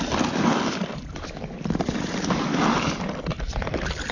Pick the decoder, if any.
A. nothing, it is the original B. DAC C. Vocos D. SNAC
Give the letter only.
A